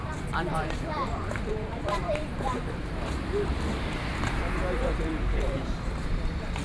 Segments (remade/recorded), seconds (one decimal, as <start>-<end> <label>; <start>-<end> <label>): 0.0-6.6 remade